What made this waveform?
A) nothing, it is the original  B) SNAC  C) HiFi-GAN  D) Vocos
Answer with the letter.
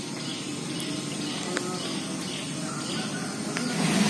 A